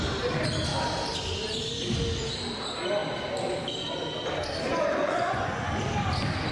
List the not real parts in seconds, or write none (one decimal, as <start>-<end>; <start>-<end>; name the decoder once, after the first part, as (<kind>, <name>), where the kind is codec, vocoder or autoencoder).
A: 4.7-5.7 (vocoder, Vocos)